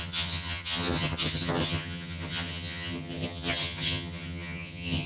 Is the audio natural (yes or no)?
no